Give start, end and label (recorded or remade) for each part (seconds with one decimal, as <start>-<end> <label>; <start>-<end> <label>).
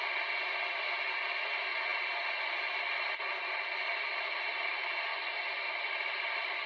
0.0-6.7 recorded